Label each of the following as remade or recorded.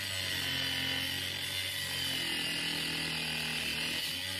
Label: recorded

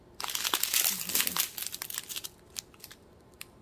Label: recorded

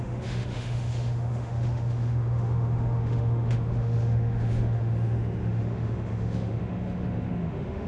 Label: remade